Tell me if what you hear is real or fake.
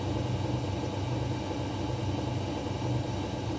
real